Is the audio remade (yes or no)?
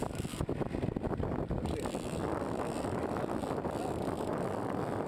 no